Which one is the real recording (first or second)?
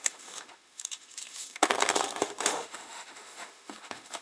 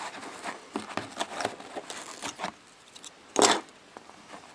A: second